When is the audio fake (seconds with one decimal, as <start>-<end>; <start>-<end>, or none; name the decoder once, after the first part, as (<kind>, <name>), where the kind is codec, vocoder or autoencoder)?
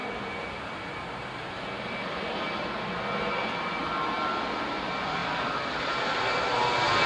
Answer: 0.0-2.7 (vocoder, BigVGAN v2); 5.2-6.2